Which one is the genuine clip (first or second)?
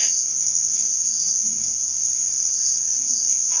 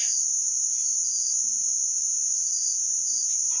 second